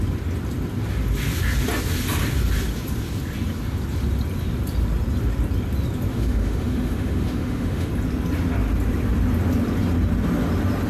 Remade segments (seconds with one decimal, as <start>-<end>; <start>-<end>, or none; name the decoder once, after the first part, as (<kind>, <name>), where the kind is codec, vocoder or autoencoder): 6.1-7.9 (autoencoder, DAC-VAE)